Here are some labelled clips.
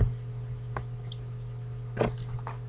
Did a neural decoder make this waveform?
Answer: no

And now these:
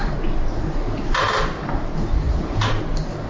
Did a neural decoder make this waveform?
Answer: no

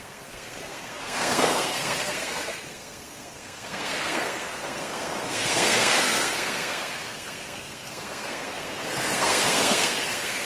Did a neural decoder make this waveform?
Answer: yes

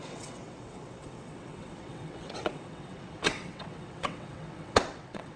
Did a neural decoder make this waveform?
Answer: yes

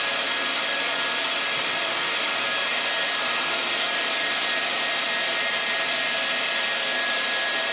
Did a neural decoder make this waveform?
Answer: no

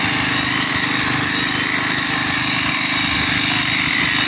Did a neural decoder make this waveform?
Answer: no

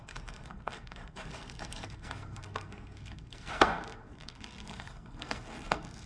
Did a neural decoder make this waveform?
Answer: yes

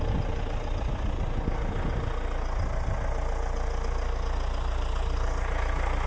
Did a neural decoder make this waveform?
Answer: no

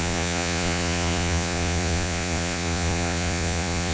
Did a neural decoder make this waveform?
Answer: yes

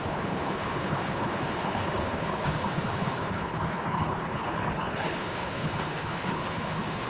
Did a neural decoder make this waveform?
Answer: yes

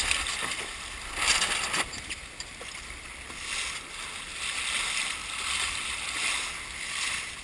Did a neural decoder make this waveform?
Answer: no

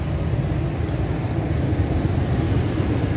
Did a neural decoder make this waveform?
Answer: no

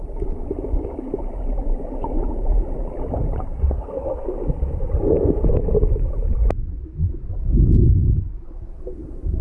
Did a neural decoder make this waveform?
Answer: no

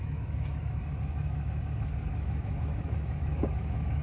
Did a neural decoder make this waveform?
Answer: yes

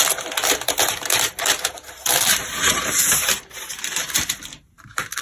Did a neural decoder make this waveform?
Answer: yes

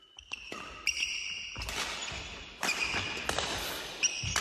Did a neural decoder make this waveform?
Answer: no